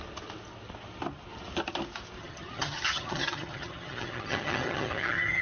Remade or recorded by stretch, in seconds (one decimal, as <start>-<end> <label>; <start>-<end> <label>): 0.0-2.2 recorded; 2.2-5.4 remade